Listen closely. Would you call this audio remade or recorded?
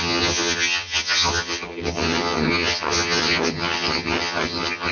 remade